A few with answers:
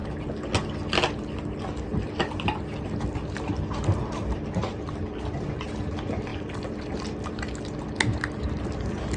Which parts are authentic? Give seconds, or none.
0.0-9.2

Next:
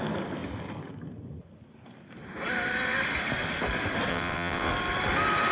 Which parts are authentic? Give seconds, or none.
0.0-4.1; 4.7-5.5

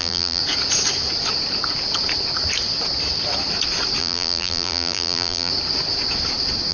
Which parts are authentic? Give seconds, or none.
0.4-4.0; 5.5-6.7

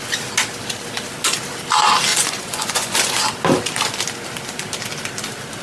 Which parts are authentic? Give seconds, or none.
0.0-2.1; 3.3-5.6

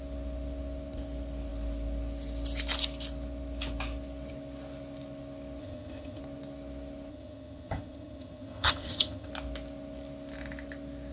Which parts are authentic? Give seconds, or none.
0.0-5.6; 6.2-7.1; 9.3-11.1